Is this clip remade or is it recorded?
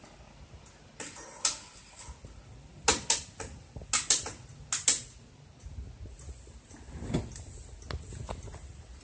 recorded